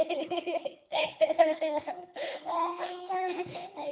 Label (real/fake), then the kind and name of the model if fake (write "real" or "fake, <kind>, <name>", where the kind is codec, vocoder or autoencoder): fake, codec, HILCodec